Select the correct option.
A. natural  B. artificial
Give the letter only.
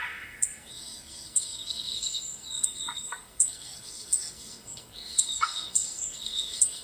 B